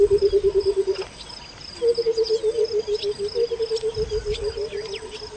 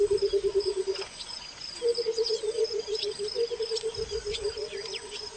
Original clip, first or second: first